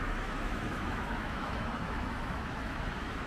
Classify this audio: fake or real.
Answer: fake